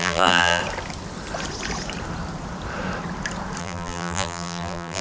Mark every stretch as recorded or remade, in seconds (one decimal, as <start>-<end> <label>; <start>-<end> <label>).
0.0-0.6 remade; 0.6-3.6 recorded; 3.6-5.0 remade